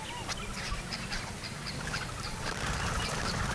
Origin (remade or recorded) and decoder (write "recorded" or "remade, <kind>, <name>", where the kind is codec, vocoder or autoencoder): recorded